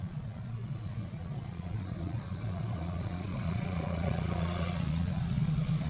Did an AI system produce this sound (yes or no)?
yes